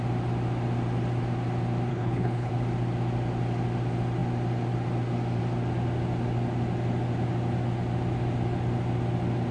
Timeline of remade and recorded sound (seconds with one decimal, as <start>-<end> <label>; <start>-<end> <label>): 0.0-1.9 recorded; 1.9-2.5 remade; 2.5-9.5 recorded